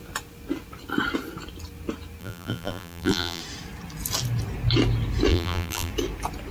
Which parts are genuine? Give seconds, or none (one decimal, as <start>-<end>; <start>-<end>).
0.0-2.2; 3.4-5.3; 5.9-6.5